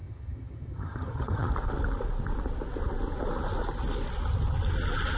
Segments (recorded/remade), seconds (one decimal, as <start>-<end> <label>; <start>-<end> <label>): 0.0-1.5 remade; 1.5-5.2 recorded